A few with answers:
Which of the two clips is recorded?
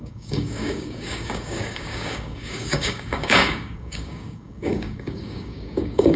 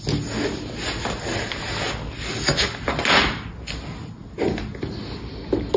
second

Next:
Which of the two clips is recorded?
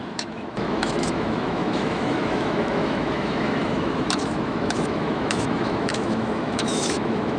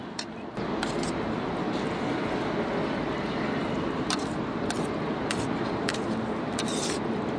second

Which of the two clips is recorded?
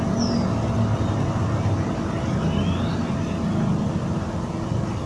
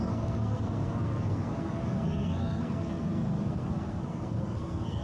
first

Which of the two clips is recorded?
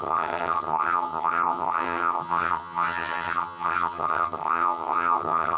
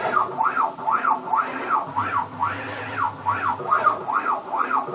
second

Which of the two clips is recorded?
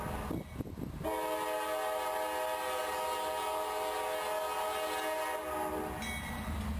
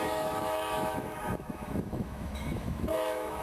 first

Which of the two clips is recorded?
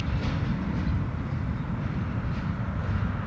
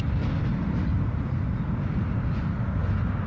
second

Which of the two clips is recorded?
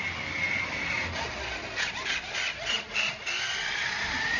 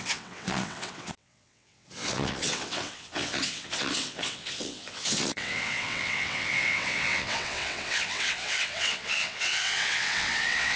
first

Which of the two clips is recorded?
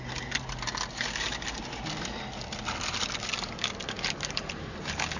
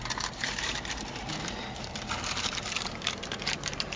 first